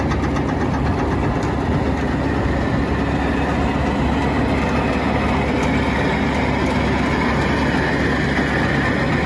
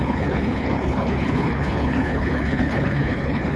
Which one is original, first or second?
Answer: first